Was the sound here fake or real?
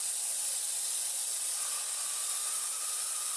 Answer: real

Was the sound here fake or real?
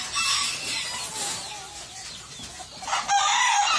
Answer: real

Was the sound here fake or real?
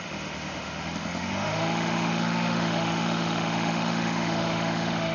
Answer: fake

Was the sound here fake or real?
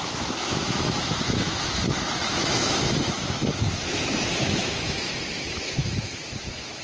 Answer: fake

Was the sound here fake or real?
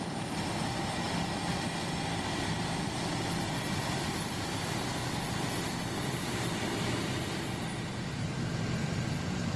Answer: real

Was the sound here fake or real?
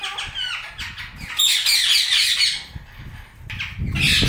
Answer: real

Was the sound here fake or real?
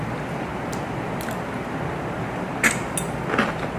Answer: real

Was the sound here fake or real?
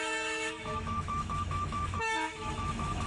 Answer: fake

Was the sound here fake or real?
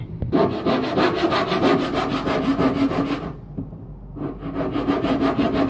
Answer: real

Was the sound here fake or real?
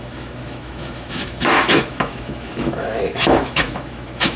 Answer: fake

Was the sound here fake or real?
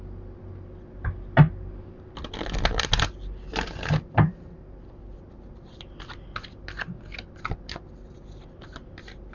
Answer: real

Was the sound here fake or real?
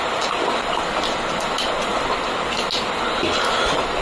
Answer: real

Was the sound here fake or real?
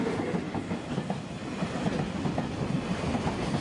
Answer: real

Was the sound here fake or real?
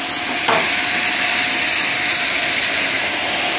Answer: real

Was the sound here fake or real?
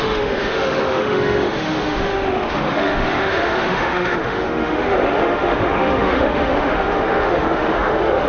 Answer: fake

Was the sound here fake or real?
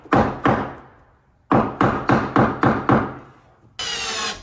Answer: real